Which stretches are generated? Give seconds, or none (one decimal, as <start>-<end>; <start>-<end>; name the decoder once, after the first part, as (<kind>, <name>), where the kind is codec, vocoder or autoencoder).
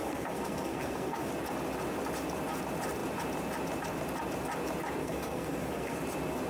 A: 0.0-1.3 (codec, SNAC); 5.0-6.0